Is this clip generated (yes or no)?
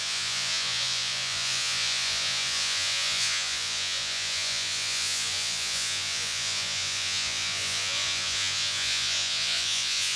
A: yes